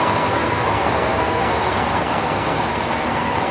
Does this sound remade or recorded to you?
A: remade